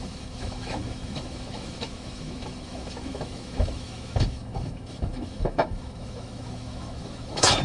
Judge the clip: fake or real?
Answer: fake